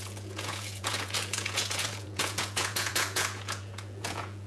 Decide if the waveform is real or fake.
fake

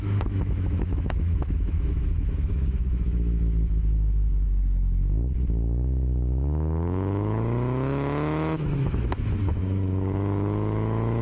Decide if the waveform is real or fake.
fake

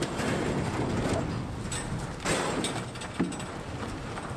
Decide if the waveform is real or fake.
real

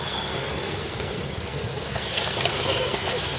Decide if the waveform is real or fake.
fake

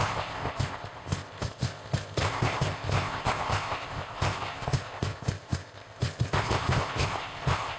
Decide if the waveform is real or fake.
fake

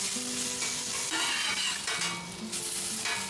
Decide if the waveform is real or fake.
real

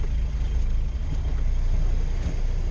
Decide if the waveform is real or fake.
real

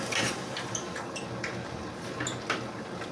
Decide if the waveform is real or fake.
real